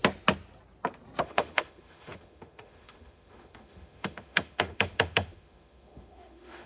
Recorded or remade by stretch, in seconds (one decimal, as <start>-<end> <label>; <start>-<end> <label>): 0.0-1.2 recorded; 1.2-6.7 remade